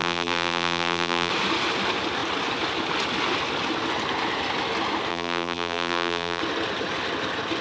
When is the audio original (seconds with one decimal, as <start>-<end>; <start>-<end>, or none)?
1.3-5.1; 6.4-7.6